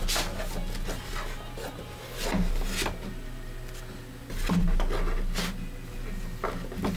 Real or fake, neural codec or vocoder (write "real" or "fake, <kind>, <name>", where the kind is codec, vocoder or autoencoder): real